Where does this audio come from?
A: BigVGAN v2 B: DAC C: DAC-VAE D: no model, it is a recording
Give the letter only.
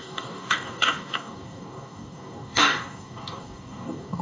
B